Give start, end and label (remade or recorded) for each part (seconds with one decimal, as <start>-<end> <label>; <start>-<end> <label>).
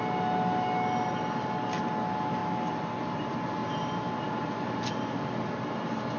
0.0-6.2 recorded